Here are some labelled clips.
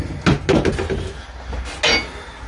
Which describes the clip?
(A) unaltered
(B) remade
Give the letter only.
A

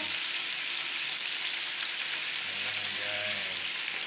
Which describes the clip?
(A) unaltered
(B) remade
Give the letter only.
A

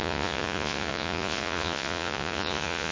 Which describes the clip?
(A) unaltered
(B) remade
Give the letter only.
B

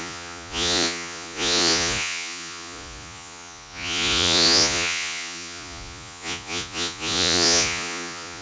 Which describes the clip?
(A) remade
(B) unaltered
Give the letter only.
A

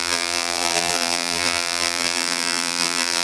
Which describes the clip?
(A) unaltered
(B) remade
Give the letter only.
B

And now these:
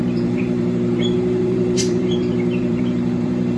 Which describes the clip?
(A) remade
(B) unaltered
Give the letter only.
A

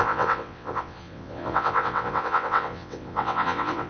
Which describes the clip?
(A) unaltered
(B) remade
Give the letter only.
B